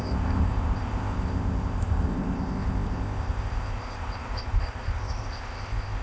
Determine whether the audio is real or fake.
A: fake